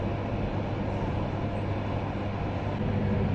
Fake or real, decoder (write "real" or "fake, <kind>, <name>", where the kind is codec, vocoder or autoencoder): real